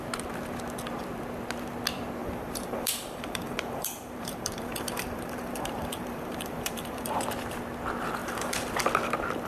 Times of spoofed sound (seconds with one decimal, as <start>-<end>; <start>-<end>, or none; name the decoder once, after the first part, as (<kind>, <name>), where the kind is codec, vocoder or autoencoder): 2.2-7.2 (vocoder, BigVGAN v2); 8.2-8.8